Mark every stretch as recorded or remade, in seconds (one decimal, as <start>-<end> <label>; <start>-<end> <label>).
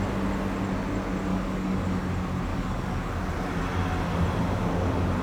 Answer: 0.0-1.3 recorded; 1.3-2.1 remade; 2.1-2.5 recorded; 2.5-3.1 remade; 3.1-5.2 recorded